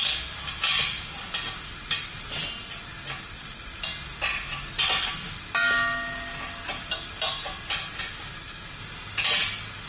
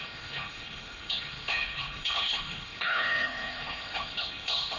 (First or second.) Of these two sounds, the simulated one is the second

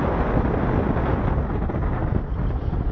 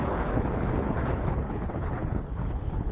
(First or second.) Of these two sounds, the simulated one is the second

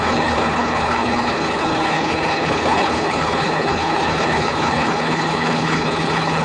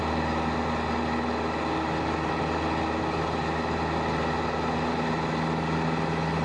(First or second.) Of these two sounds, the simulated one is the first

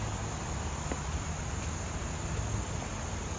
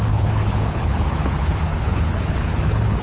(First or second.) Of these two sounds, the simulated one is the second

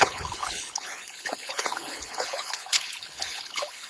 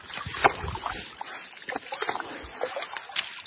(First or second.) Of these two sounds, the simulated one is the first